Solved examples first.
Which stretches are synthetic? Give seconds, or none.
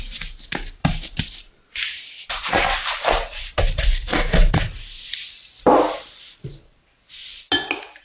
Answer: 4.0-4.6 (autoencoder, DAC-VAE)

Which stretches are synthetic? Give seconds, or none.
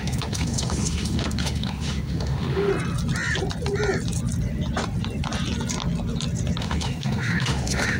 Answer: 0.0-2.7 (autoencoder, DAC-VAE); 6.6-8.0